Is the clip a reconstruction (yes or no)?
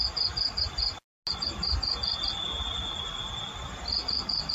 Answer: no